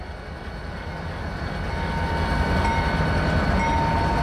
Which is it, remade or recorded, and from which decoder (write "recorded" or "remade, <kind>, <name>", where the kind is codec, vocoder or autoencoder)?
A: recorded